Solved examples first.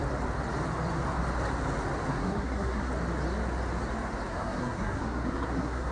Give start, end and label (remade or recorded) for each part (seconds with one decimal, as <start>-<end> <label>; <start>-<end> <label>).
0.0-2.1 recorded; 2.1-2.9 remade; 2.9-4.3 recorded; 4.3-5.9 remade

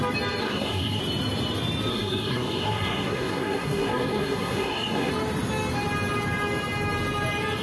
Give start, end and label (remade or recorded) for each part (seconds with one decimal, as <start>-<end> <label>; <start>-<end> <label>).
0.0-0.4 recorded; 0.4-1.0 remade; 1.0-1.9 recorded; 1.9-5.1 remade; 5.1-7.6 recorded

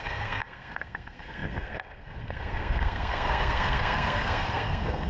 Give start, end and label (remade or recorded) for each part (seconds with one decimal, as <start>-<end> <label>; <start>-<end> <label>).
0.0-5.1 remade

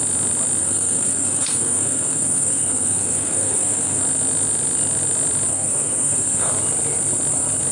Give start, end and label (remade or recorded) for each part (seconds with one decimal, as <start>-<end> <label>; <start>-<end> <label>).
0.0-0.6 recorded; 0.6-4.0 remade; 4.0-5.5 recorded; 5.5-6.5 remade; 6.5-7.7 recorded

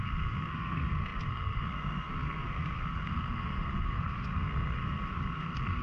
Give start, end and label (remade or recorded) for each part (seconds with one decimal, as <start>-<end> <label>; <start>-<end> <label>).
0.0-5.8 remade

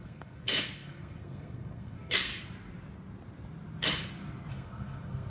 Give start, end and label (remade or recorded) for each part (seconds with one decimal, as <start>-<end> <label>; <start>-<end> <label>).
0.0-2.3 remade; 2.3-4.5 recorded; 4.5-5.3 remade